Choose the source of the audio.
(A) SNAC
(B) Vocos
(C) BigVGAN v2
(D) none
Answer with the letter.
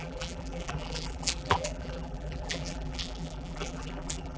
C